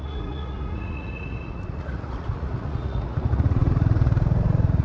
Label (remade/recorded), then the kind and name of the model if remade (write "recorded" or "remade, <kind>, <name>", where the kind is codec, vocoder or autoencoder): remade, vocoder, Vocos